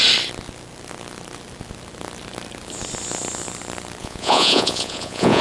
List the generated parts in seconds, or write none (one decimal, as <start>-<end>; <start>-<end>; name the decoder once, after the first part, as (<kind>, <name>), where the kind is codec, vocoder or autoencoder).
4.0-5.4 (vocoder, Vocos)